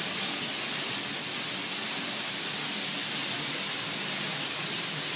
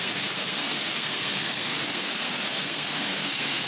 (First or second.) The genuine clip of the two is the first